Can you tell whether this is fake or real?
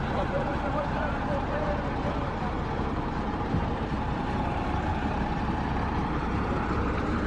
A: fake